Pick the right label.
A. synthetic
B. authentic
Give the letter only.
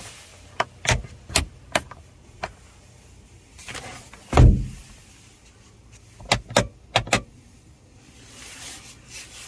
B